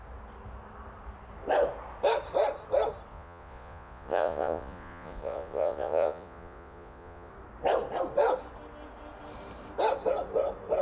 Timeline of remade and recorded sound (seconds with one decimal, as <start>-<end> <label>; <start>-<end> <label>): 0.0-3.1 recorded; 3.1-7.3 remade; 7.3-10.8 recorded